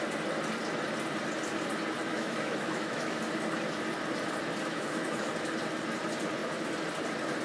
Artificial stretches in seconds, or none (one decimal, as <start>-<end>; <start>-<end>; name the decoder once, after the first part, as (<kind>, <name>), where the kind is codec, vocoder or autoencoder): 2.1-3.2 (autoencoder, DAC-VAE); 4.7-5.3